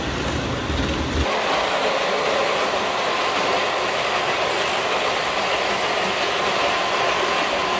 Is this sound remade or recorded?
recorded